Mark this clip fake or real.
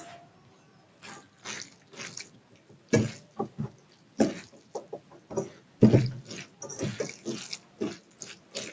real